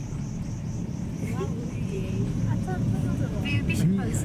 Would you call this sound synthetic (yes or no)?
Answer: yes